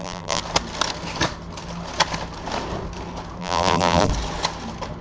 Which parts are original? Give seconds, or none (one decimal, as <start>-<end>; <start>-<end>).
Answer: 0.4-3.4; 4.1-5.0